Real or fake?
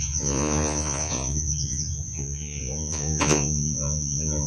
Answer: fake